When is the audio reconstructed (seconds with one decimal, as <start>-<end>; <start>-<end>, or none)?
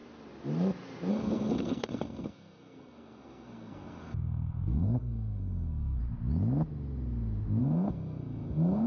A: 1.1-6.0; 7.6-8.9